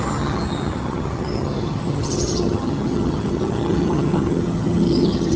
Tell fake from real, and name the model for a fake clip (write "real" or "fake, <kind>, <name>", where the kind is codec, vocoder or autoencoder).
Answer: fake, vocoder, HiFi-GAN